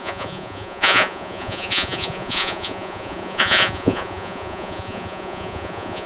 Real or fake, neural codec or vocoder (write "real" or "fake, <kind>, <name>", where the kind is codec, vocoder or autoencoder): fake, vocoder, Vocos